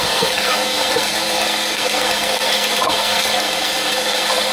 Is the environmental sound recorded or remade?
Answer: remade